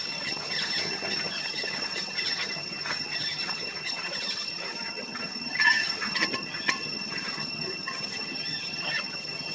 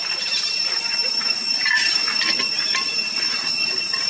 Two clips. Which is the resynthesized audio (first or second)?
first